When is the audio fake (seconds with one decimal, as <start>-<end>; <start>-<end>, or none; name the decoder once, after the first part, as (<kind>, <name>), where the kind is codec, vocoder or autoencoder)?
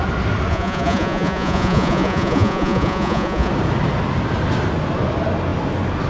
0.5-3.5 (vocoder, Vocos)